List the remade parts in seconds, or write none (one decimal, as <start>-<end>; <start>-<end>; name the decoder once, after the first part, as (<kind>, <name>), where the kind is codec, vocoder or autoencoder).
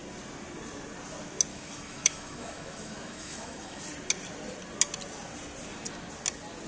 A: 1.5-3.8 (autoencoder, DAC-VAE)